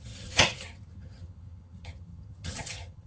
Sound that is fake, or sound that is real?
fake